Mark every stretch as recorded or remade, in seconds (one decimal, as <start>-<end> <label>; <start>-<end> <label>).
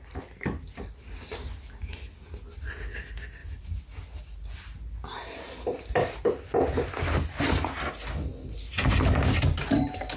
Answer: 0.0-10.2 recorded